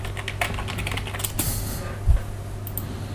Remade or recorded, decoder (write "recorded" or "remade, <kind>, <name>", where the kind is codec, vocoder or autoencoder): recorded